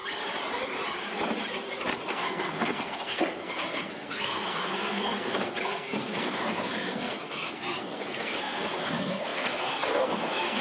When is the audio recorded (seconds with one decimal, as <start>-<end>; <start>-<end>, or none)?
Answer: 0.0-2.1